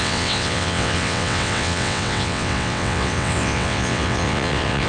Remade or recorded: remade